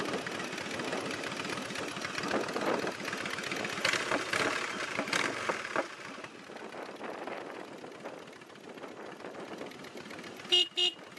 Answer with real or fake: real